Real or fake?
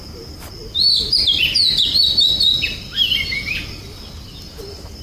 real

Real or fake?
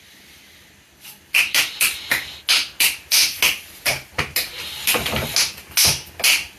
real